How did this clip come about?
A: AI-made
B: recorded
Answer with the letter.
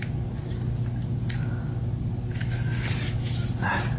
B